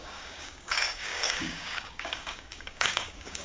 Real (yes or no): no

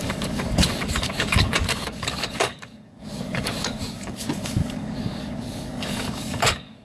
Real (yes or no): no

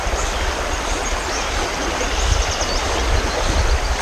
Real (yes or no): yes